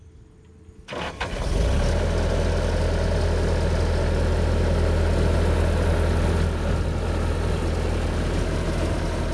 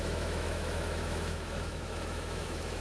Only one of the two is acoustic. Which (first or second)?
first